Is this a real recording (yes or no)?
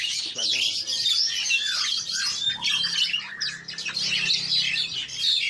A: yes